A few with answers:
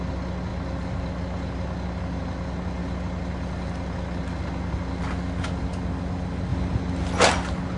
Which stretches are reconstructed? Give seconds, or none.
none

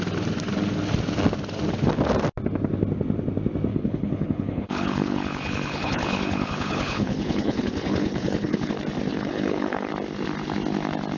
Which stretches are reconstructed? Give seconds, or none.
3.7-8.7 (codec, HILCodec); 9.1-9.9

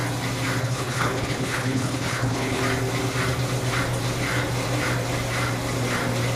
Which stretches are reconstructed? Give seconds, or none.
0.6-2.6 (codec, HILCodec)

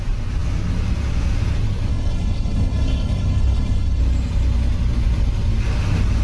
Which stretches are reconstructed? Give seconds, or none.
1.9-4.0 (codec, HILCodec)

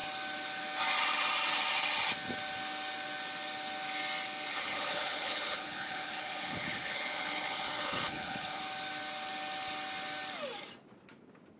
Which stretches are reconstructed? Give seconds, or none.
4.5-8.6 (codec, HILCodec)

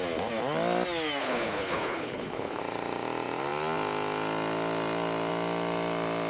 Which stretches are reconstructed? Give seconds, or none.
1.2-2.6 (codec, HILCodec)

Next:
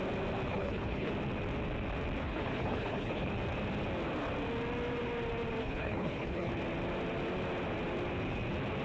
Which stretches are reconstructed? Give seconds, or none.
0.5-1.1 (codec, HILCodec); 2.2-3.3; 5.6-6.5